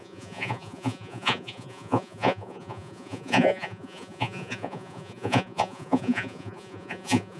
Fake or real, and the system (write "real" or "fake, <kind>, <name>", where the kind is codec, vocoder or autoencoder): fake, vocoder, Vocos